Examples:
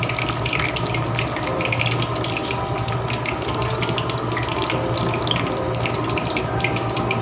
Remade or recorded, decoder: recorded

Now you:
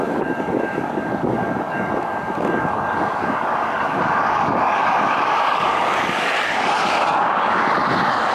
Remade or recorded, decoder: remade, codec, DAC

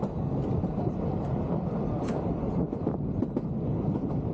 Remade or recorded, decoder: recorded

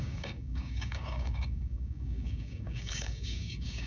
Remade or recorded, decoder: remade, codec, DAC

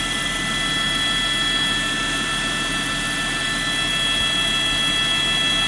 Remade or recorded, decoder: recorded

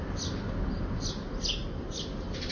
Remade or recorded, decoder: recorded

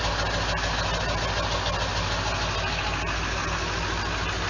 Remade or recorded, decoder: recorded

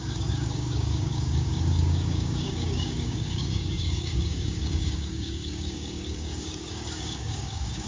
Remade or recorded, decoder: remade, codec, DAC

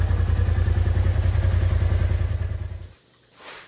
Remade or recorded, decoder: recorded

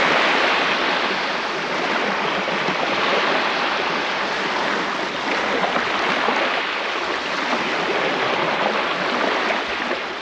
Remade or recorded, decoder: recorded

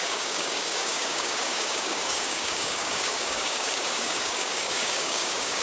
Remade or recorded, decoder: remade, codec, DAC